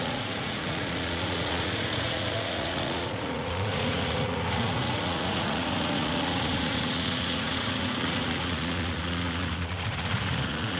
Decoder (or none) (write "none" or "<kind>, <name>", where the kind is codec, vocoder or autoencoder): vocoder, Vocos